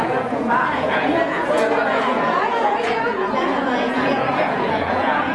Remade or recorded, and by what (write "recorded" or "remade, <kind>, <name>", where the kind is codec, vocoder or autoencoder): remade, vocoder, Vocos